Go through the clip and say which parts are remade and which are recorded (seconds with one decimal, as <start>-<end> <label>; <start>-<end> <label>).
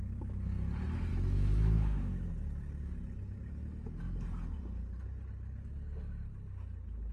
0.0-1.1 recorded; 1.1-2.3 remade; 2.3-7.1 recorded